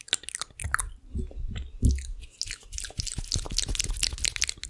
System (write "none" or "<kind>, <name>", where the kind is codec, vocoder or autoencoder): none